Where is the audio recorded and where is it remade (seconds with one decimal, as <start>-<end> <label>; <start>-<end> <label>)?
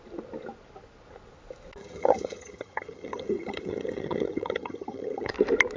0.0-1.8 recorded; 1.8-5.3 remade; 5.3-5.8 recorded